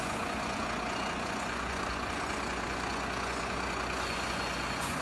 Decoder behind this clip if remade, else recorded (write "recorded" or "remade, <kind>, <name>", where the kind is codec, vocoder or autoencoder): remade, vocoder, Vocos